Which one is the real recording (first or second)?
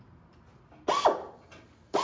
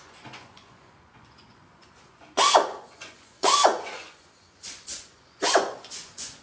first